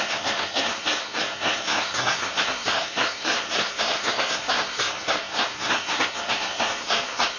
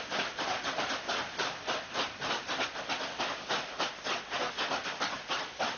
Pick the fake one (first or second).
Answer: first